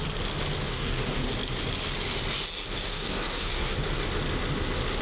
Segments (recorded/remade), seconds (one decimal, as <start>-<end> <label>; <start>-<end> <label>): 0.0-0.7 recorded; 0.7-1.2 remade; 1.2-2.9 recorded; 2.9-3.7 remade; 3.7-5.0 recorded